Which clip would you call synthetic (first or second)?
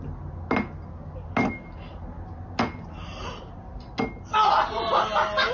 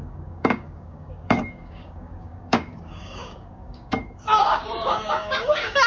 second